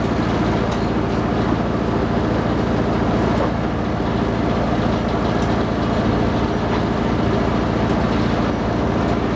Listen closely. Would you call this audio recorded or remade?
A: recorded